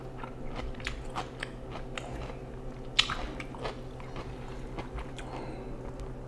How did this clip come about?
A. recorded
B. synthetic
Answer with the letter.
A